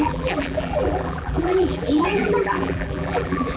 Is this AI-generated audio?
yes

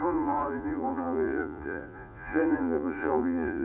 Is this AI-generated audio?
yes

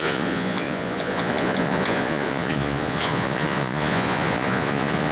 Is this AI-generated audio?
yes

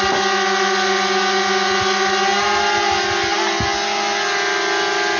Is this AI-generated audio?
no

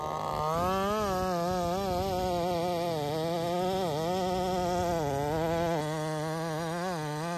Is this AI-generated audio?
no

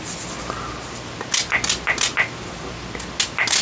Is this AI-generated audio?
no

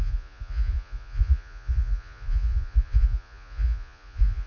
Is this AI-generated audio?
yes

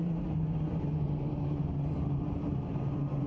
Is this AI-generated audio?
yes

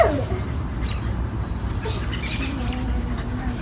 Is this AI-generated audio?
yes